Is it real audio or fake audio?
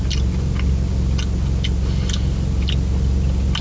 real